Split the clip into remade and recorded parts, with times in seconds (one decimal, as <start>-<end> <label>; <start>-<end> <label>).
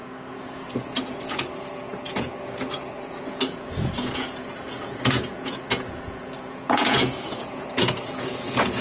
0.0-8.8 remade